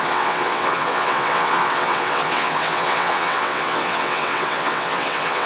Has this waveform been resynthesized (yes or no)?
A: yes